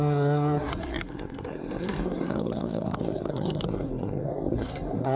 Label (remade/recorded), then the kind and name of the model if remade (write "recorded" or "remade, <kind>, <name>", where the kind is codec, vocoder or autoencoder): remade, codec, SNAC